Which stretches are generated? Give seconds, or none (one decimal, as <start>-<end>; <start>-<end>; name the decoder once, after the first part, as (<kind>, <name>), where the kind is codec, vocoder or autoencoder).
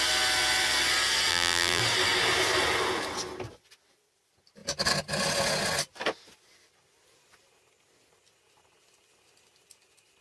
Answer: 1.3-1.8 (vocoder, BigVGAN v2)